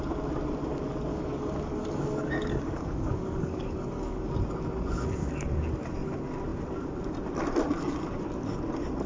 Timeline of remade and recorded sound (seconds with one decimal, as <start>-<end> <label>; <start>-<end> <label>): 0.0-1.1 recorded; 1.1-4.3 remade; 4.3-9.1 recorded